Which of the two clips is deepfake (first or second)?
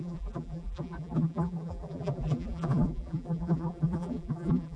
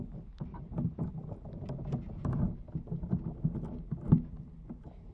first